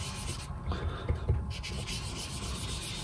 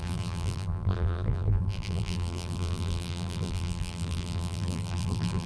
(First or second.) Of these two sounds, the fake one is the second